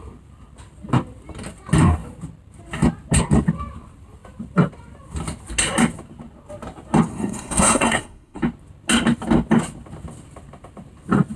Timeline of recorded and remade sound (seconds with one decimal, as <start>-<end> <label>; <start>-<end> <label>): 0.0-7.1 recorded; 7.1-8.4 remade; 8.4-11.4 recorded